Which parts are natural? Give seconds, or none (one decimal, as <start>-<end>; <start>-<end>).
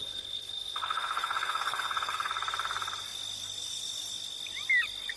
2.3-5.2